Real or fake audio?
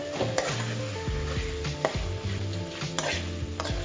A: real